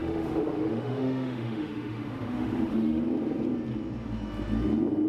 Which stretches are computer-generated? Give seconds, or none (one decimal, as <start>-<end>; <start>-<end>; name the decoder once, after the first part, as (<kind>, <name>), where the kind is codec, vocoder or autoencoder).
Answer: 0.0-3.0 (autoencoder, DAC-VAE)